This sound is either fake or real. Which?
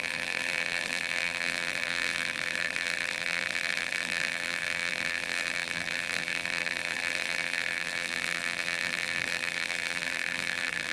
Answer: fake